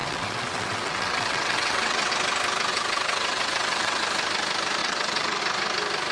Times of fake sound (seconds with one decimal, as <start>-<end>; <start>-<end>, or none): 0.0-2.1; 2.7-4.0; 4.8-5.4